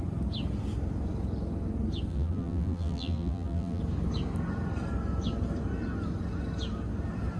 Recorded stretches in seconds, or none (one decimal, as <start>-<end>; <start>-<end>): 0.0-2.1; 3.8-7.4